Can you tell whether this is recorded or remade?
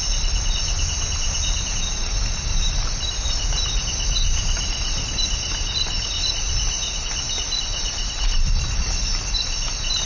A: recorded